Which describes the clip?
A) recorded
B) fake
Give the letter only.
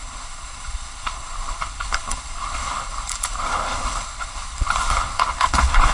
B